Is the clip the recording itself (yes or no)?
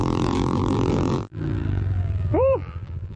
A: no